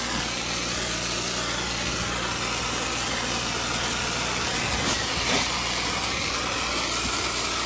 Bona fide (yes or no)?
yes